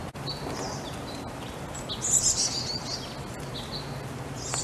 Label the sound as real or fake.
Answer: real